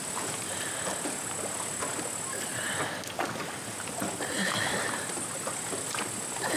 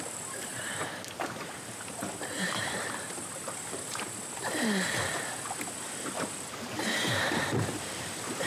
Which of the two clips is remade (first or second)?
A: second